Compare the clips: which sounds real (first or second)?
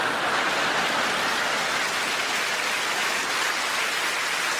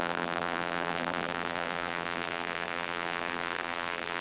first